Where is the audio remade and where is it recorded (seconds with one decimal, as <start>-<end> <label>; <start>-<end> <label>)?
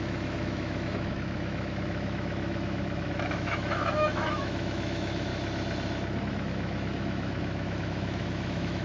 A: 0.0-5.3 remade; 5.3-6.2 recorded; 6.2-8.8 remade